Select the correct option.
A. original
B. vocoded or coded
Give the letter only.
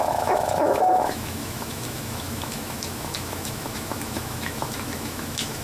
B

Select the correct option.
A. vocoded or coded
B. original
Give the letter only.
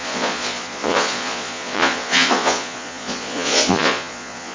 A